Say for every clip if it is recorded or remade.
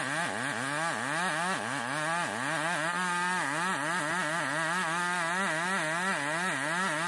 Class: recorded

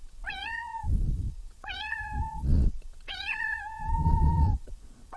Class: remade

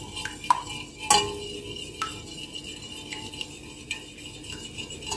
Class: recorded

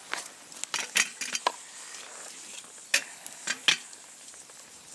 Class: recorded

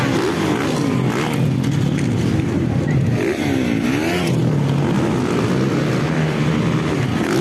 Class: recorded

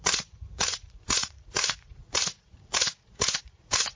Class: remade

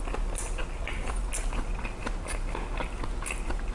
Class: recorded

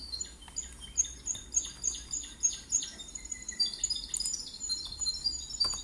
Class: recorded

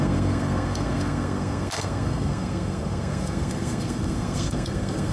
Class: remade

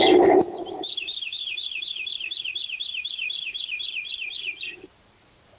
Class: remade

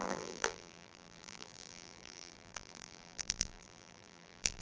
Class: remade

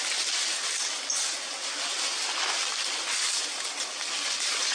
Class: recorded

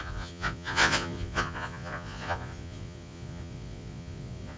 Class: remade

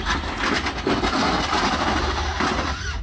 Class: recorded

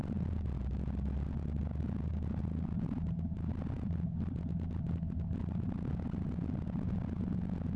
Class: recorded